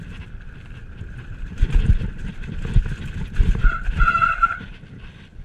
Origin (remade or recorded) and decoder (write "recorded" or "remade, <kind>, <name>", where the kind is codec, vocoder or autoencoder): recorded